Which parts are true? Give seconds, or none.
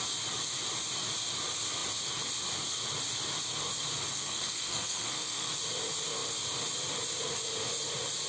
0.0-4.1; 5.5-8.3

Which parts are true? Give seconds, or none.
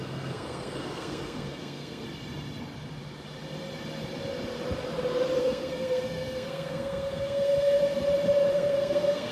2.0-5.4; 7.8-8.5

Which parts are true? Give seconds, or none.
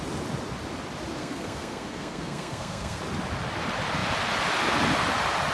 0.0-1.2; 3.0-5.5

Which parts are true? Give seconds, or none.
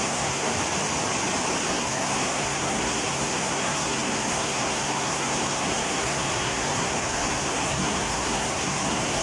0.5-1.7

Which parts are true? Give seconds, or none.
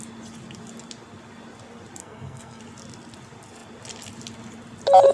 0.0-2.0; 2.6-5.1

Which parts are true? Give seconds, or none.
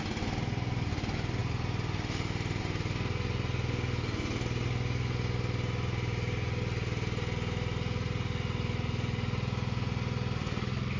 0.0-11.0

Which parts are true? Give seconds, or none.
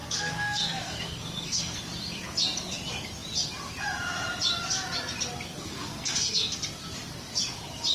1.8-5.5; 6.6-7.9